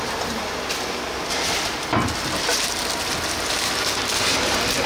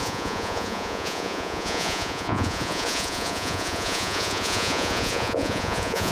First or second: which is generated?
second